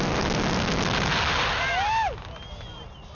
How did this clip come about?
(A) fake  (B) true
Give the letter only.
B